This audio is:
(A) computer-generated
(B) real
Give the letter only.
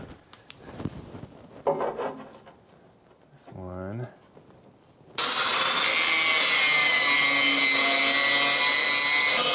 B